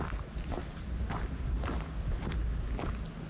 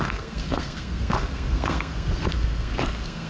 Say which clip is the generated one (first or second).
second